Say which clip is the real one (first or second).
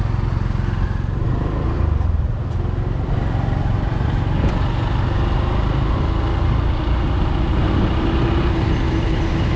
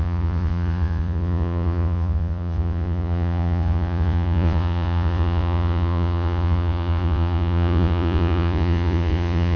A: first